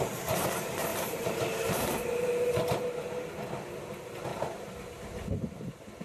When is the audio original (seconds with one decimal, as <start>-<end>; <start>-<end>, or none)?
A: 0.0-0.9; 2.3-4.3; 4.8-6.0